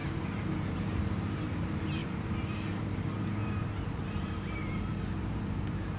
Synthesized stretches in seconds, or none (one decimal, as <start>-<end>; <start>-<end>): 0.0-6.0

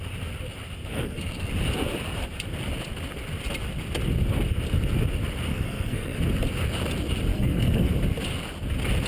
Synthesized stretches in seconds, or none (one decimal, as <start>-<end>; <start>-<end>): 0.9-1.5; 5.5-6.2; 7.3-7.9

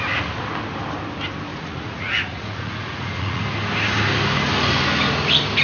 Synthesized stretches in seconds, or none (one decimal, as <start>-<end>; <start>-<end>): 1.5-3.4

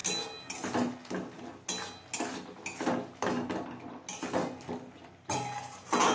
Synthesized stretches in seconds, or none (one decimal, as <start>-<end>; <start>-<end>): none

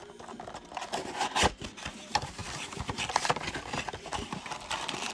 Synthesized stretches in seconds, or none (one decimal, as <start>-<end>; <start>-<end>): 1.0-1.5

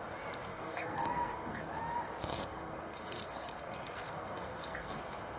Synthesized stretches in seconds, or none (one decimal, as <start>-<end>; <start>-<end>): 0.5-1.7; 2.3-5.0